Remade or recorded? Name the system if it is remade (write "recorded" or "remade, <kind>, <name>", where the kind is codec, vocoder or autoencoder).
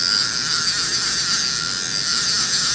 recorded